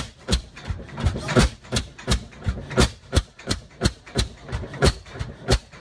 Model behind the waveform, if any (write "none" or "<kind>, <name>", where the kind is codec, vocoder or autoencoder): vocoder, BigVGAN v2